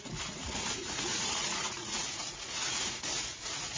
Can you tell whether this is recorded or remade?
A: remade